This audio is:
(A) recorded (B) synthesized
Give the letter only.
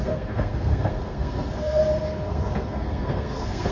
B